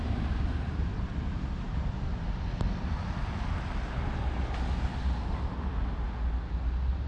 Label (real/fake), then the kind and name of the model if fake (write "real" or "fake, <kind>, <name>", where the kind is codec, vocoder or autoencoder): real